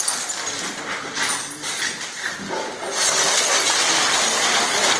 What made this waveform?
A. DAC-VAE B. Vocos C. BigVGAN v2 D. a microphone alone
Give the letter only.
D